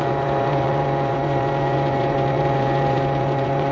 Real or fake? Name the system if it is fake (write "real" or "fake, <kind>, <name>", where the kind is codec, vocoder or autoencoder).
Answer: fake, vocoder, Vocos